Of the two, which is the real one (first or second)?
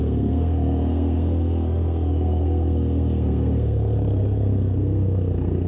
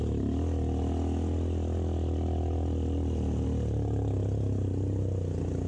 second